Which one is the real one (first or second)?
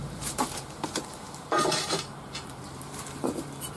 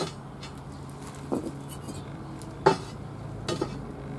second